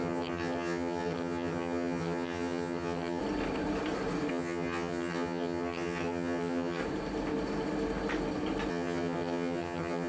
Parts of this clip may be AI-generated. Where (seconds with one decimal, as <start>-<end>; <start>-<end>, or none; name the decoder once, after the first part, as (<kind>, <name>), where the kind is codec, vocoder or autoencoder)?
0.0-3.2 (vocoder, HiFi-GAN); 4.3-6.8; 8.7-10.1